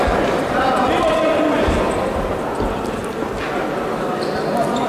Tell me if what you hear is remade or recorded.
recorded